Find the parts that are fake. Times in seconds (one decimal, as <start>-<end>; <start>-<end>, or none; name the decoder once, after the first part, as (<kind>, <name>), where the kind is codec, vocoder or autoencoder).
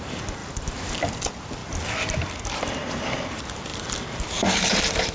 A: none